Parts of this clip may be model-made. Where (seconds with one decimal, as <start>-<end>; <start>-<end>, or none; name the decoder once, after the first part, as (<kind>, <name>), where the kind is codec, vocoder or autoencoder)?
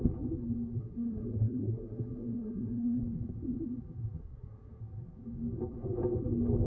0.8-3.0 (codec, SNAC); 4.2-4.8